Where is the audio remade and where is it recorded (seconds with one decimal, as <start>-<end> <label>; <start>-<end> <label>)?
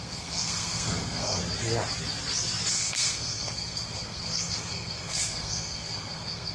0.0-1.4 remade; 1.4-2.7 recorded; 2.7-6.5 remade